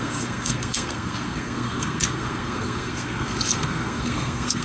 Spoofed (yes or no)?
yes